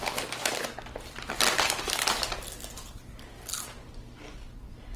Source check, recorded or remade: recorded